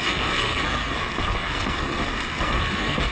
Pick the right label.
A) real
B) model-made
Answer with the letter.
B